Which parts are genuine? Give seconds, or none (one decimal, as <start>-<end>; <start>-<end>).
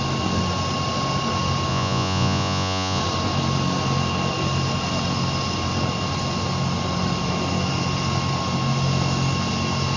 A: 0.0-1.7; 3.0-10.0